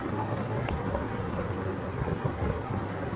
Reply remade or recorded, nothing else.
remade